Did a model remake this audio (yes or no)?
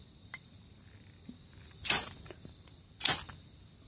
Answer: no